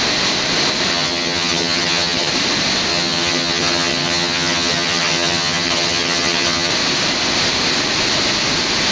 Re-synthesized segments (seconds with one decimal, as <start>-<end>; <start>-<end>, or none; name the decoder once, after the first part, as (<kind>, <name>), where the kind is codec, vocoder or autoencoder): 0.9-2.3 (vocoder, HiFi-GAN); 2.9-6.7